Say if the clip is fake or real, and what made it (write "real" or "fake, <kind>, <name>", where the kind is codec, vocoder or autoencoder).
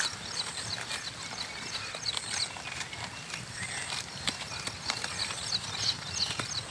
real